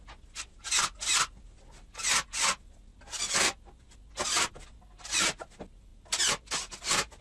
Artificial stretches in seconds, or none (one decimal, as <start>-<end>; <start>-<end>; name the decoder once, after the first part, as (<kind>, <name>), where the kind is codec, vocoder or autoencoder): none